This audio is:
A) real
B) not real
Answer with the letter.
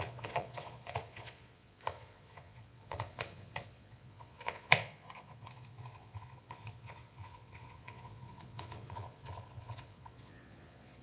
B